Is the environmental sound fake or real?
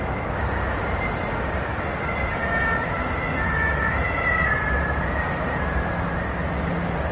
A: real